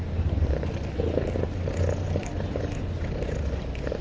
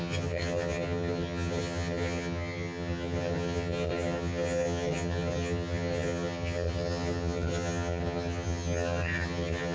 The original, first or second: first